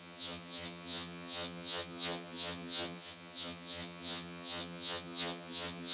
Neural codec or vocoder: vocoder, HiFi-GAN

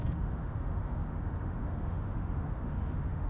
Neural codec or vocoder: autoencoder, DAC-VAE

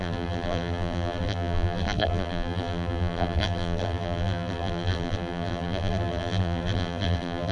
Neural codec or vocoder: vocoder, BigVGAN v2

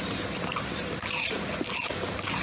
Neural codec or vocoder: none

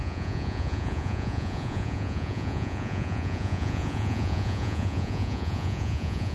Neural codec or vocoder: vocoder, Vocos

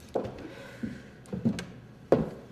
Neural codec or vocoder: none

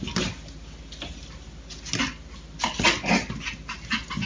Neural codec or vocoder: none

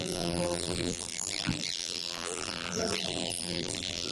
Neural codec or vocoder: vocoder, BigVGAN v2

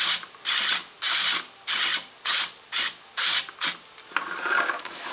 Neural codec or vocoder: none